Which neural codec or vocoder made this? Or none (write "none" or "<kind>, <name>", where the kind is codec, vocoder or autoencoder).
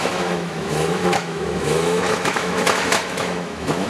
autoencoder, DAC-VAE